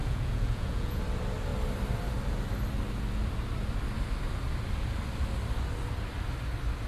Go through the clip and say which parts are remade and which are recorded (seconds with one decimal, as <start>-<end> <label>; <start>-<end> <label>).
0.0-1.0 remade; 1.0-6.9 recorded